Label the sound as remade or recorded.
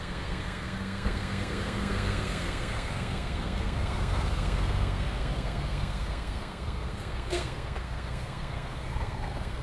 remade